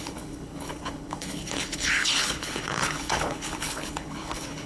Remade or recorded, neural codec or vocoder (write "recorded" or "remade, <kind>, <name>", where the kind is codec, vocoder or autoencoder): remade, codec, HILCodec